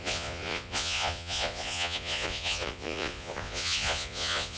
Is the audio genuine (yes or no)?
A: no